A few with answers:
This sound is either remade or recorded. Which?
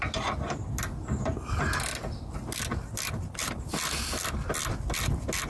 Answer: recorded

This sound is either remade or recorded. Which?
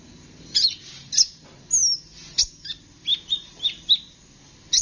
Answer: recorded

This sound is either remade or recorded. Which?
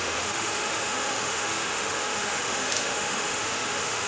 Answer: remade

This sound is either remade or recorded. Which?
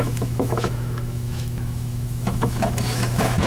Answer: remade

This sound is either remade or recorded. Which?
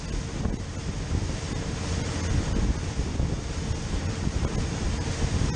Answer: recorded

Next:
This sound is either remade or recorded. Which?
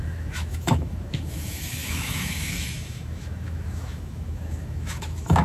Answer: remade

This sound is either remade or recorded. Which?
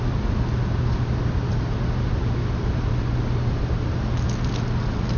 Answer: recorded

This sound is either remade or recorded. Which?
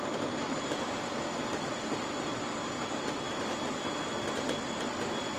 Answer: recorded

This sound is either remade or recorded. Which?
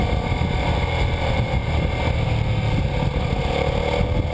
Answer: recorded